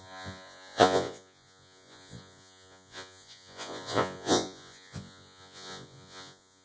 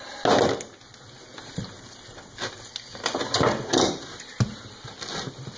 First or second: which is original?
second